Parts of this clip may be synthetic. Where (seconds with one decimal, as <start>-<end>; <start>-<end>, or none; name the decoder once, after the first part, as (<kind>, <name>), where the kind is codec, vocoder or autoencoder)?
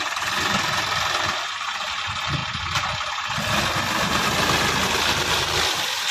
none